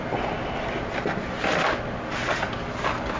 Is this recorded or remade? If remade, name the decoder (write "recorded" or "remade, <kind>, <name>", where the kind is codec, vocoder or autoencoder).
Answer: recorded